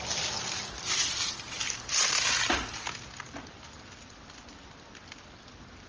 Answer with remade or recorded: recorded